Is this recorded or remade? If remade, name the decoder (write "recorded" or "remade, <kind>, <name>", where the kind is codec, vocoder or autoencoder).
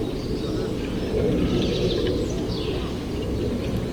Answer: recorded